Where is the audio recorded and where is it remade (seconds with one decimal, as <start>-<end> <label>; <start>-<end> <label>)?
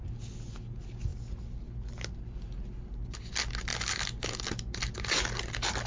0.0-5.9 recorded